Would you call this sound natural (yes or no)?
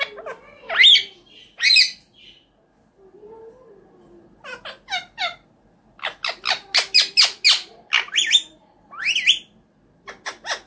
yes